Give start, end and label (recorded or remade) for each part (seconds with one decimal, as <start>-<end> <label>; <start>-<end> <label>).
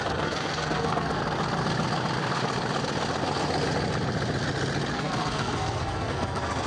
0.0-1.2 remade; 1.2-4.9 recorded; 4.9-6.7 remade